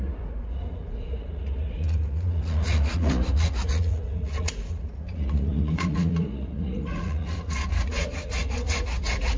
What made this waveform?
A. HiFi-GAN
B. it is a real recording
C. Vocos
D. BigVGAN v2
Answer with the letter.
C